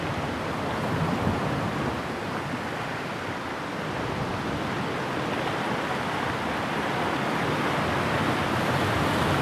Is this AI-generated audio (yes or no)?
no